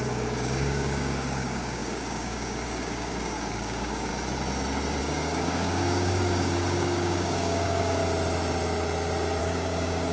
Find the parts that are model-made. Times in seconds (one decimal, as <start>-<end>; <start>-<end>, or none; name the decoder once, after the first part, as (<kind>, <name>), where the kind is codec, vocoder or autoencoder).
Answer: 0.0-4.1 (codec, DAC); 5.0-8.0; 9.4-10.1